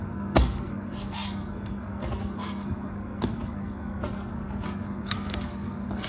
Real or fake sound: fake